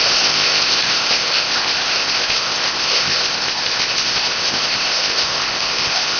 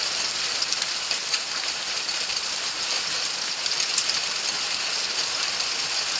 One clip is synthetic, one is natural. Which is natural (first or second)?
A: second